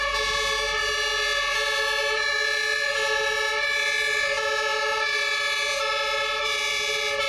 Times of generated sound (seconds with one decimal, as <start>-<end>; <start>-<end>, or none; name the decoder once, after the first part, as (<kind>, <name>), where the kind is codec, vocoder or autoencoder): none